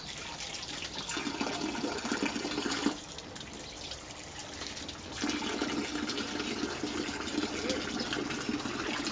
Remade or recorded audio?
recorded